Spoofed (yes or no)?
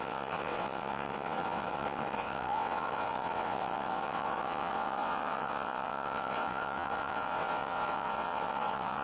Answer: yes